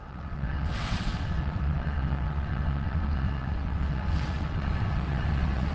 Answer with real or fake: fake